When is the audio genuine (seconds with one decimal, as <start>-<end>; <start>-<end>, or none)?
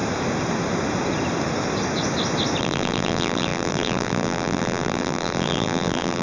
0.0-2.6